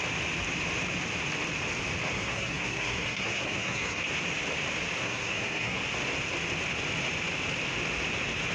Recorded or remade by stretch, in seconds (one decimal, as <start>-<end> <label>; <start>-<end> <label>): 0.0-2.1 recorded; 2.1-4.0 remade; 4.0-5.0 recorded; 5.0-5.8 remade; 5.8-8.5 recorded